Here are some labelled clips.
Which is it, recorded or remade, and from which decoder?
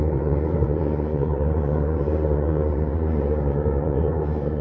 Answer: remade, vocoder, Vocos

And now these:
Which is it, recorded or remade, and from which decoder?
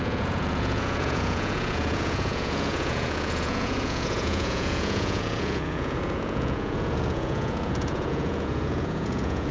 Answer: remade, vocoder, Vocos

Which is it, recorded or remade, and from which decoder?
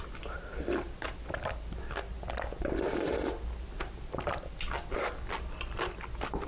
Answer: recorded